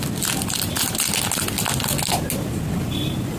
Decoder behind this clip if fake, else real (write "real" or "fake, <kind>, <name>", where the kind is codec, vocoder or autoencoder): real